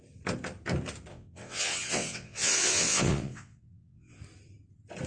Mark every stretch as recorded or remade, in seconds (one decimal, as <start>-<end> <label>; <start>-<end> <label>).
0.0-1.1 recorded; 1.1-4.2 remade; 4.2-5.1 recorded